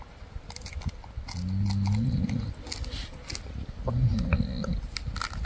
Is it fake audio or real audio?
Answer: real